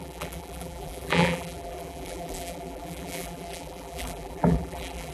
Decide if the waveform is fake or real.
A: fake